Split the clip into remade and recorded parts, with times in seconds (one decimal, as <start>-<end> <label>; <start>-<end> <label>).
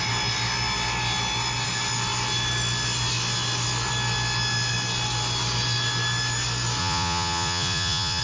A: 0.0-6.8 recorded; 6.8-8.2 remade